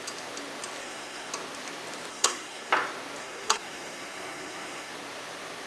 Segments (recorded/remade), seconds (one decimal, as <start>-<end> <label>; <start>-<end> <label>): 0.0-0.8 recorded; 0.8-1.3 remade; 1.3-2.1 recorded; 2.1-2.7 remade; 2.7-3.2 recorded; 3.2-4.9 remade; 4.9-5.7 recorded

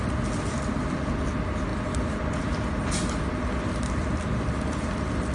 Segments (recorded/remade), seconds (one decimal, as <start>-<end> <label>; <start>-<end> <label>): 0.0-5.3 recorded